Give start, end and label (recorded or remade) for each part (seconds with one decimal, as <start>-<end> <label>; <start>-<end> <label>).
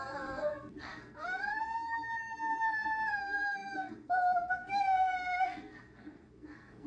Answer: 0.0-6.9 remade